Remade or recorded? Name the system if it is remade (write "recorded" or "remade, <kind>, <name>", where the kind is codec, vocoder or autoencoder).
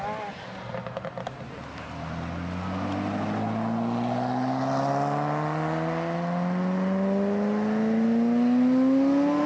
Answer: recorded